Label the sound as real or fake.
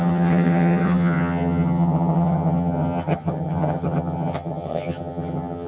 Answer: fake